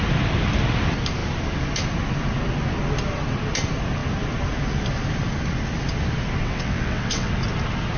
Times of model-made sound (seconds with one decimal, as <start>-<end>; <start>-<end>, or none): 6.4-7.3